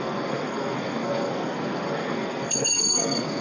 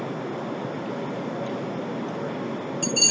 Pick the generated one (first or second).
first